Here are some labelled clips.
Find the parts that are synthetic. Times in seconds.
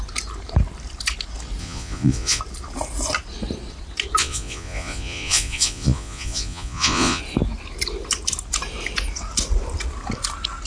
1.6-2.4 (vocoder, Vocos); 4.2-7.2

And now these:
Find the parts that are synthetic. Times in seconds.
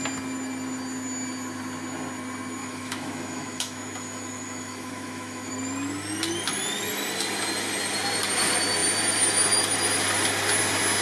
2.6-5.5 (autoencoder, DAC-VAE)